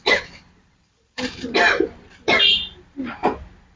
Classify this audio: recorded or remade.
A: recorded